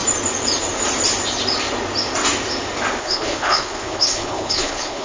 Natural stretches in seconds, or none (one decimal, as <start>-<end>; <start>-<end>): 0.0-3.0